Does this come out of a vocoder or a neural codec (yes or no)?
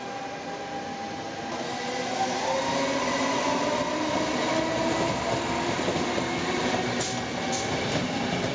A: no